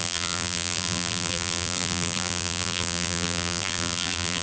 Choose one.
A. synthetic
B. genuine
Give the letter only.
A